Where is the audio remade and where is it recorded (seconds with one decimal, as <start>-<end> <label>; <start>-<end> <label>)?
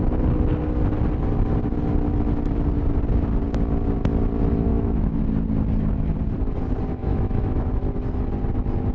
0.0-4.7 recorded; 4.7-5.2 remade; 5.2-7.0 recorded; 7.0-7.8 remade; 7.8-8.9 recorded